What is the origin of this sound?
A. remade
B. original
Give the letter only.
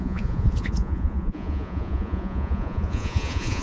A